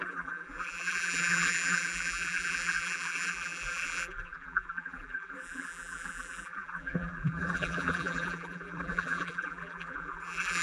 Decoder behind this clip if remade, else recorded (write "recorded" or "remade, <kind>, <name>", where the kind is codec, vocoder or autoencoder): remade, vocoder, BigVGAN v2